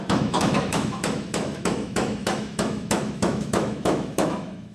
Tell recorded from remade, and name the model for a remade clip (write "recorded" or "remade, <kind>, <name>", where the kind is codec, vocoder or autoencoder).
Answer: remade, autoencoder, DAC-VAE